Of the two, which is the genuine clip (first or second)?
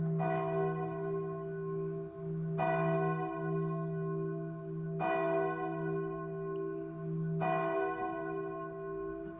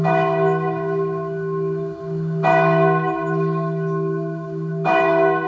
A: first